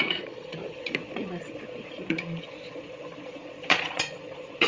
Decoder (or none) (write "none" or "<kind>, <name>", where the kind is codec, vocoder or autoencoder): vocoder, Vocos